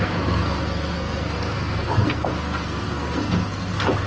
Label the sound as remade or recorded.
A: remade